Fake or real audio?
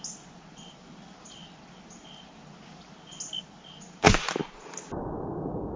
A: real